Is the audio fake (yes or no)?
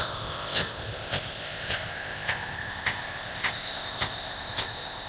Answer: yes